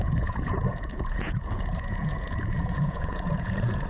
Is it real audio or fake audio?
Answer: fake